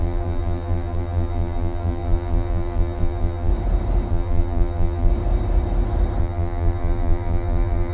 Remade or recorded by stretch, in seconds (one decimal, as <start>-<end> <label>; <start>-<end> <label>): 0.0-3.5 remade; 3.5-4.1 recorded; 4.1-5.1 remade; 5.1-6.2 recorded; 6.2-7.9 remade